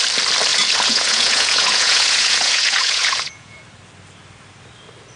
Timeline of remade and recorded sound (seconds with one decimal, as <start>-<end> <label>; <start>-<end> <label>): 0.0-0.5 recorded; 0.5-3.6 remade; 3.6-5.2 recorded